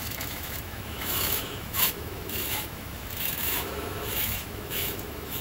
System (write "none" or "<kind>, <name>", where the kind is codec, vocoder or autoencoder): autoencoder, DAC-VAE